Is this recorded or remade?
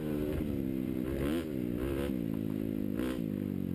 recorded